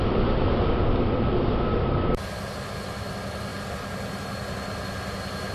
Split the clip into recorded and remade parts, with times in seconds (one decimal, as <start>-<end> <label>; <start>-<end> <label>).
0.0-5.5 recorded